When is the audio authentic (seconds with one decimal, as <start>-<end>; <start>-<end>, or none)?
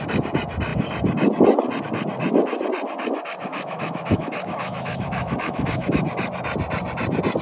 0.0-3.5; 6.0-7.4